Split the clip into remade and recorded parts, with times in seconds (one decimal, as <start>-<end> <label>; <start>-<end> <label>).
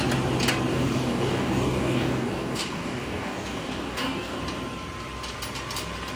0.0-0.7 recorded; 0.7-4.4 remade; 4.4-6.2 recorded